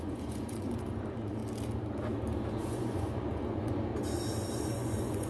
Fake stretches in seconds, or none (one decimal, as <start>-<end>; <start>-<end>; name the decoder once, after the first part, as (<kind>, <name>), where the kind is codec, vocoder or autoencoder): 0.0-1.4 (vocoder, Vocos); 2.5-3.9; 4.5-5.3